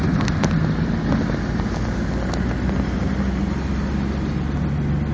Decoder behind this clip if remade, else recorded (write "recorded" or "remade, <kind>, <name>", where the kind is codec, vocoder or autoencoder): recorded